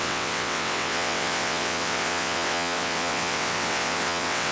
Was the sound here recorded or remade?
remade